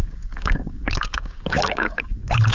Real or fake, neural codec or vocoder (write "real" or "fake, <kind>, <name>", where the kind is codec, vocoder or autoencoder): fake, codec, DAC